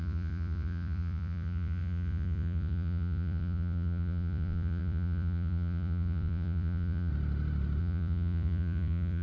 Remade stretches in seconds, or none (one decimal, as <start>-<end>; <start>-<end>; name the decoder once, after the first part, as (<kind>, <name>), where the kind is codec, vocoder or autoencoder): 0.0-7.1 (vocoder, Vocos); 7.8-9.2